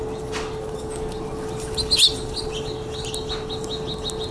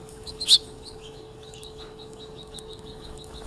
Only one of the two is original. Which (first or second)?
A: first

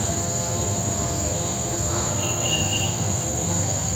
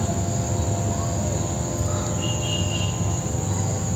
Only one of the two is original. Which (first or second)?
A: second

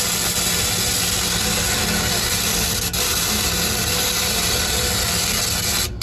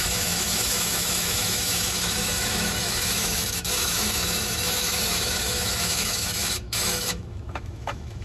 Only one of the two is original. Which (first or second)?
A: first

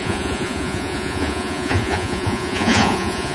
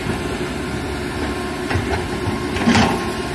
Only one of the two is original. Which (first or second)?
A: second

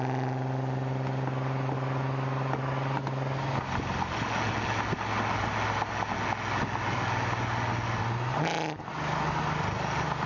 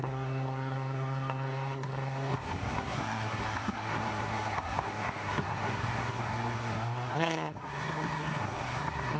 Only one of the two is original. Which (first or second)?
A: first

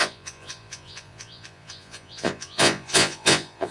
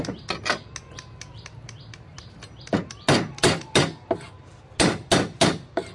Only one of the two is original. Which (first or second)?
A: second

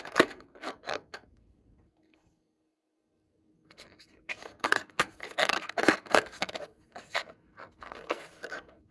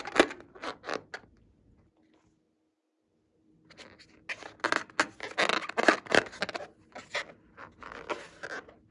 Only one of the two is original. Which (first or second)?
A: second